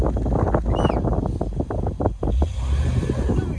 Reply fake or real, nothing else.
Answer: real